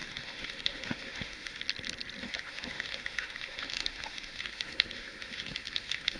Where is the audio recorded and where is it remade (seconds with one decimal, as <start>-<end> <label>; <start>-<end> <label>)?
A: 0.0-1.6 remade; 1.6-2.2 recorded; 2.2-6.2 remade